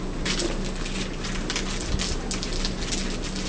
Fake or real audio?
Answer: real